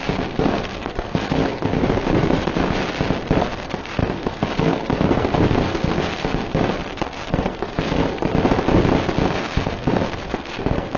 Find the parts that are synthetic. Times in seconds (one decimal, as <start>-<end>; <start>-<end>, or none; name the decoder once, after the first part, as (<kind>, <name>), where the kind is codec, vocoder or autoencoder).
0.0-2.8 (codec, SNAC); 3.4-8.3; 9.3-11.0